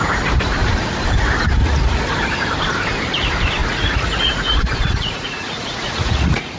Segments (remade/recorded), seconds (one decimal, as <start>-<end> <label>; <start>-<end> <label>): 0.0-1.6 recorded; 1.6-2.1 remade; 2.1-3.6 recorded; 3.6-6.6 remade